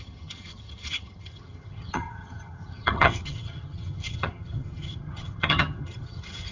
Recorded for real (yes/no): no